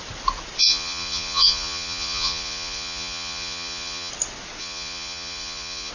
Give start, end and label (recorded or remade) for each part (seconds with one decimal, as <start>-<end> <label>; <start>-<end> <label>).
0.0-0.6 recorded; 0.6-4.1 remade; 4.1-4.6 recorded; 4.6-5.9 remade